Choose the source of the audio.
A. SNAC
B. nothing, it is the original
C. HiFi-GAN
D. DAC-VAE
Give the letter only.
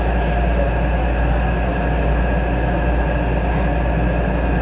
B